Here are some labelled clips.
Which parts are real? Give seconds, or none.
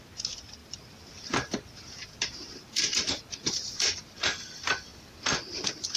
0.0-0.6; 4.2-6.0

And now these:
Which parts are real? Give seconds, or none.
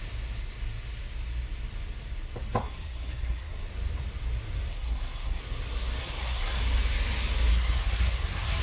0.0-2.6; 3.6-4.7; 5.4-6.0; 6.6-7.5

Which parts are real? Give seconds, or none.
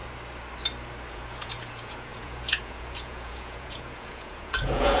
0.0-1.1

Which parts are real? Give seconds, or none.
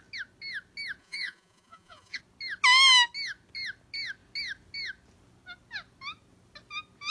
0.0-1.0; 2.2-7.1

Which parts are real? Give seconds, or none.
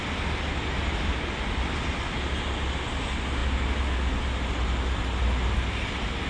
0.0-6.3